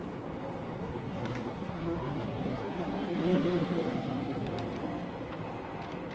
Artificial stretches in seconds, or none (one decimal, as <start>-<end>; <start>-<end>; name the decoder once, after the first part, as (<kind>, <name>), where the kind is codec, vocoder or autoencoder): 0.8-4.5 (codec, SNAC)

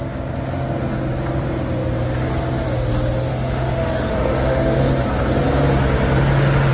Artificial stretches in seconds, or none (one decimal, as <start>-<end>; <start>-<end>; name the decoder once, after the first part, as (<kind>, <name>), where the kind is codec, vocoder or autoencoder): 3.3-4.8 (autoencoder, DAC-VAE)

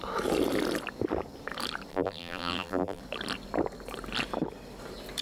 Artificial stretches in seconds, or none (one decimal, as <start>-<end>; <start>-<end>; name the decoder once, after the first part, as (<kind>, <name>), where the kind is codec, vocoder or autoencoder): 1.9-3.0 (vocoder, BigVGAN v2)

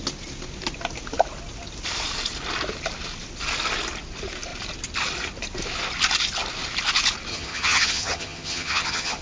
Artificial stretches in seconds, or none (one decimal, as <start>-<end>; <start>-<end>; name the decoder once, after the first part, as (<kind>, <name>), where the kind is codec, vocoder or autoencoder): 7.3-9.2 (vocoder, HiFi-GAN)

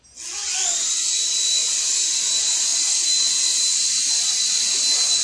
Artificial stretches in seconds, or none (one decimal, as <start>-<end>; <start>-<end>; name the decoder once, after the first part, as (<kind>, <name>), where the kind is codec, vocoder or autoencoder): none

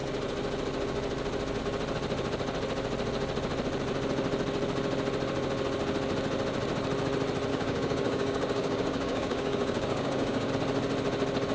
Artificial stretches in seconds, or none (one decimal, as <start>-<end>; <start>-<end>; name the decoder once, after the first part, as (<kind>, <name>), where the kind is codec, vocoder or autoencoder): 7.5-10.5 (codec, DAC)